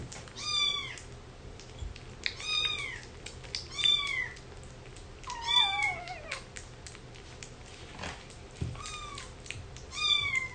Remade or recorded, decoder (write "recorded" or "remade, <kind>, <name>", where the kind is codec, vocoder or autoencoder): recorded